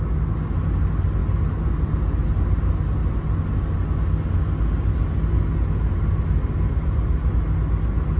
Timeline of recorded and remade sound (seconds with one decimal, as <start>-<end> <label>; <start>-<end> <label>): 0.0-8.2 recorded